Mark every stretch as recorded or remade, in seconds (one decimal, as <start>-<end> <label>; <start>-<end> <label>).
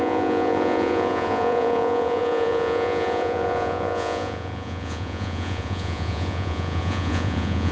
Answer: 0.0-7.7 remade